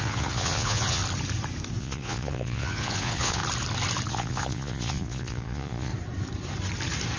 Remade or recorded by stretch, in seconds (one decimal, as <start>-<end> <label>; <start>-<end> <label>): 0.0-1.0 remade; 1.0-1.8 recorded; 1.8-3.4 remade; 3.4-4.1 recorded; 4.1-5.9 remade; 5.9-7.2 recorded